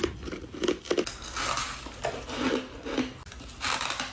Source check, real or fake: real